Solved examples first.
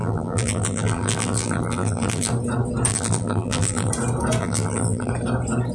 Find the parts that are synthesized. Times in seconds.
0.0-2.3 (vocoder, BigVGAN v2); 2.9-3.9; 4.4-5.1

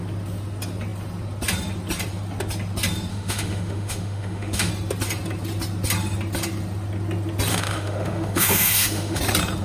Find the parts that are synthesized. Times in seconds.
3.1-4.7 (autoencoder, DAC-VAE); 7.5-9.2

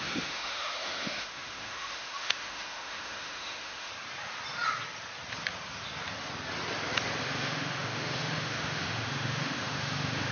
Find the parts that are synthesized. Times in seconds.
0.0-3.9 (autoencoder, DAC-VAE); 7.2-10.3